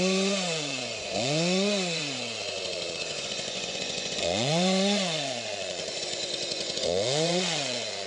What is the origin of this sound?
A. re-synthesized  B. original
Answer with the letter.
A